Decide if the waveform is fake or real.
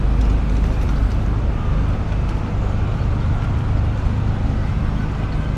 real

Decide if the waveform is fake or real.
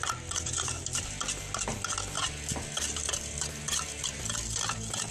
real